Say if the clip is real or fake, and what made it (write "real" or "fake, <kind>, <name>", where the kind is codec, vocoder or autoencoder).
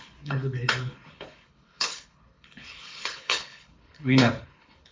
fake, codec, HILCodec